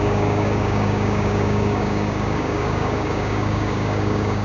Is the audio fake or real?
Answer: fake